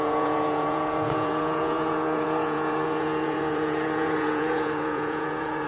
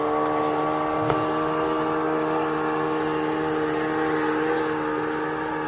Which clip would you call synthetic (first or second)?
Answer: first